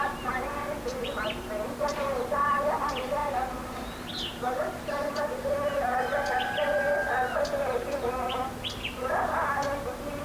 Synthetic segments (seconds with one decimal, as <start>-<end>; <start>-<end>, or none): 3.2-5.2